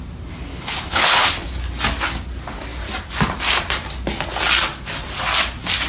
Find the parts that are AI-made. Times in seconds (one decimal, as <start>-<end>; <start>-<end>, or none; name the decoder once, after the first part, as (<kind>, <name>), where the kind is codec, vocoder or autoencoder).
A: 0.5-1.3 (codec, HILCodec)

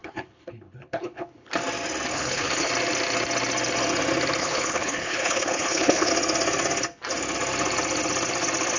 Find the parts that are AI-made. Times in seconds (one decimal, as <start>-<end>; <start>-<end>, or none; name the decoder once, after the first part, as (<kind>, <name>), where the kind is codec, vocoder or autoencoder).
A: 0.0-1.5 (codec, HILCodec); 2.1-2.7; 4.4-6.1

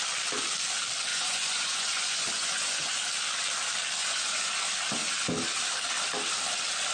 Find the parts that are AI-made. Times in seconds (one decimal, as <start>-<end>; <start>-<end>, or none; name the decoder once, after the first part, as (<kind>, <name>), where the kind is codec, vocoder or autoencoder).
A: 1.1-2.9 (vocoder, Vocos); 4.0-4.5

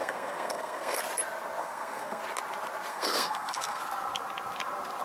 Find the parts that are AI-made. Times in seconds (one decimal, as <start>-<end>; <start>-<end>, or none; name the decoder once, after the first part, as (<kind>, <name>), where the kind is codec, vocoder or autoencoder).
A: 0.0-1.0 (codec, SNAC); 1.6-2.2; 2.9-3.8

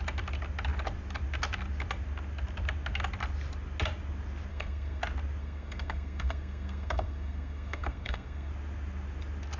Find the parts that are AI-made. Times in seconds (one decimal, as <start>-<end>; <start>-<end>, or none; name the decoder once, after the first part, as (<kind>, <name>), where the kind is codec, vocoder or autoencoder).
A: 4.5-5.0 (codec, SNAC); 5.4-8.5